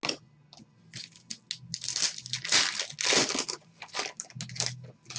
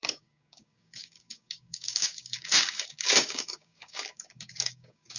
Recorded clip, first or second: first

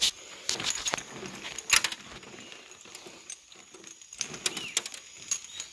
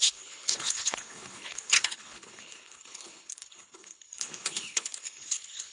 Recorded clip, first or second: first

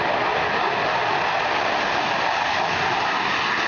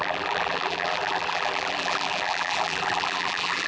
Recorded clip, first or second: first